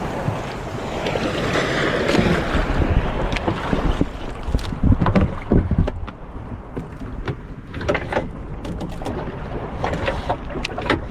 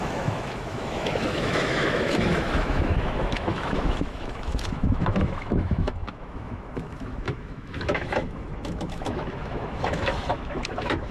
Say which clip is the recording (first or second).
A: first